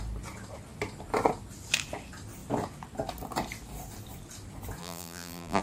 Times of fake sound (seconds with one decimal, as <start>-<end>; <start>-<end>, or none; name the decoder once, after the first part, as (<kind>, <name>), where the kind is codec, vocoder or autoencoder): 4.8-5.6 (vocoder, BigVGAN v2)